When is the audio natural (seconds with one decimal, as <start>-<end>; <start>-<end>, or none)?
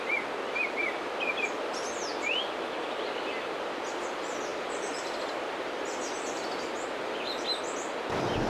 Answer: 0.0-4.5; 7.3-8.5